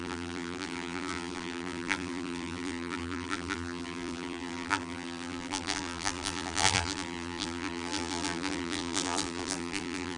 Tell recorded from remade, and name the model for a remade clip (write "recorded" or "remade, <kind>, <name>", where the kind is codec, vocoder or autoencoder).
remade, vocoder, BigVGAN v2